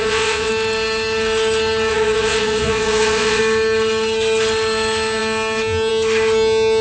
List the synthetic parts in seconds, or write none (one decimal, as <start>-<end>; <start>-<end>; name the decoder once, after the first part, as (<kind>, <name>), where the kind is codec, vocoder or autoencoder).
0.0-0.5 (vocoder, Vocos); 1.9-3.4